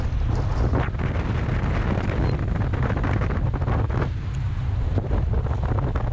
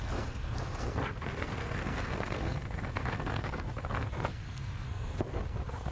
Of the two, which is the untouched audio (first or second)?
first